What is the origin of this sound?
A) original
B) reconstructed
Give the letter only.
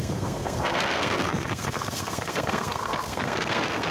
B